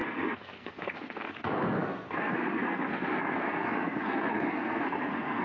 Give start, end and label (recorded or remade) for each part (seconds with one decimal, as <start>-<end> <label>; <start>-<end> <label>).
0.0-5.4 remade